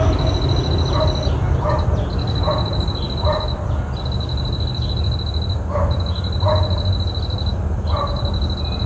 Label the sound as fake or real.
real